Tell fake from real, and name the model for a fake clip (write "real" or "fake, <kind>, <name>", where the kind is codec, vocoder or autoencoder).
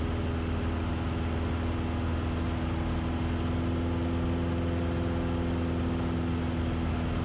real